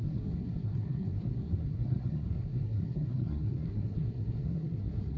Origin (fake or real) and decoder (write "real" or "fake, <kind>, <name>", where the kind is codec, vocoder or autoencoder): fake, codec, SNAC